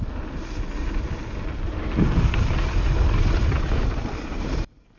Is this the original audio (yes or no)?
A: yes